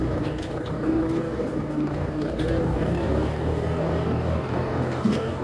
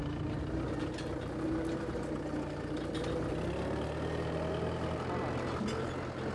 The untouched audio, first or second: second